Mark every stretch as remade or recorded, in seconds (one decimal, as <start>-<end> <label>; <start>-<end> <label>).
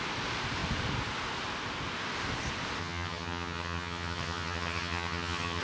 0.0-2.8 recorded; 2.8-5.6 remade